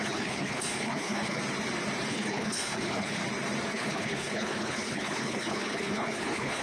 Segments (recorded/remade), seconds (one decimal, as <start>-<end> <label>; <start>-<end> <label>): 0.0-1.4 remade; 1.4-2.1 recorded; 2.1-3.2 remade; 3.2-3.7 recorded; 3.7-6.6 remade

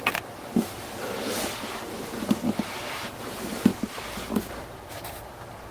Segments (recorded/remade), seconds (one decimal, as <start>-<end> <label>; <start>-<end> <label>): 0.0-3.7 recorded; 3.7-4.5 remade; 4.5-5.7 recorded

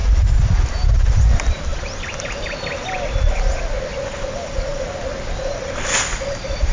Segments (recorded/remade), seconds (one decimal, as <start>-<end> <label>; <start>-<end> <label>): 0.0-6.7 recorded

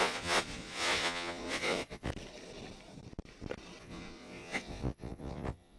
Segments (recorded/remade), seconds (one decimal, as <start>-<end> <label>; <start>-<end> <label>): 0.0-2.1 remade; 2.1-3.8 recorded; 3.8-5.8 remade

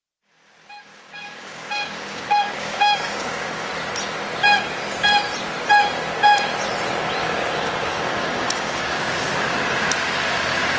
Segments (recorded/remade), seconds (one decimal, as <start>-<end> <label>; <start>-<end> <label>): 0.0-0.8 recorded; 0.8-3.7 remade; 3.7-7.2 recorded; 7.2-9.3 remade; 9.3-10.8 recorded